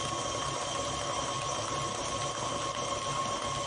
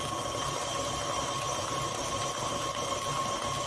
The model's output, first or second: second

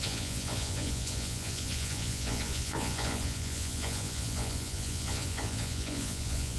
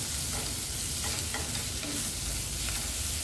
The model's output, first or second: first